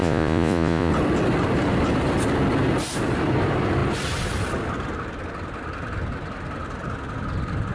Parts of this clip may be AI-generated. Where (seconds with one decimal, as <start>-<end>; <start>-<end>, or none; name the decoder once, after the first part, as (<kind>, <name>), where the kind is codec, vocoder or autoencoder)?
0.0-0.9 (vocoder, Vocos)